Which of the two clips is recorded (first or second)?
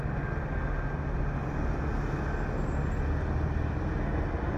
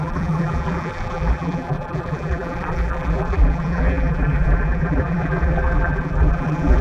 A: first